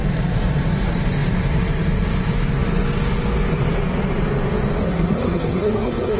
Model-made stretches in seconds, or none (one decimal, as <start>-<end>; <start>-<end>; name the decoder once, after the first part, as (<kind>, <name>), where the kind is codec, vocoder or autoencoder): 4.8-6.2 (codec, SNAC)